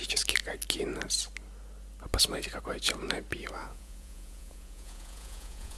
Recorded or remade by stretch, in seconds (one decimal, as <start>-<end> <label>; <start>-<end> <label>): 0.0-3.6 recorded; 3.6-5.8 remade